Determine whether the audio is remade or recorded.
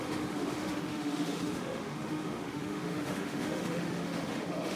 remade